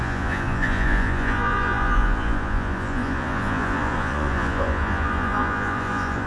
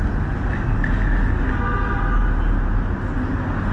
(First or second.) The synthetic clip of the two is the first